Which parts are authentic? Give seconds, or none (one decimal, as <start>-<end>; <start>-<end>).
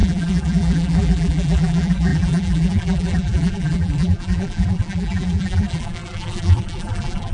none